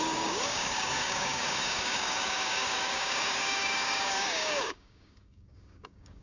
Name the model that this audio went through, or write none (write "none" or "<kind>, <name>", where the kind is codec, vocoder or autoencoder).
codec, DAC